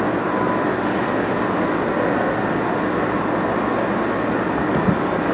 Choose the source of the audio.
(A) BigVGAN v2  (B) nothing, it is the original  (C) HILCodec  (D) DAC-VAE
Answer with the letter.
B